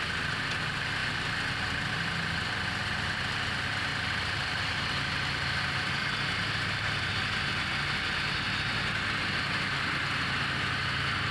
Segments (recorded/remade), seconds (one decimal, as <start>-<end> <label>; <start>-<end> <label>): 0.0-3.9 recorded; 3.9-4.6 remade; 4.6-11.3 recorded